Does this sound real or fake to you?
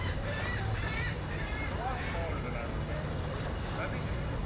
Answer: real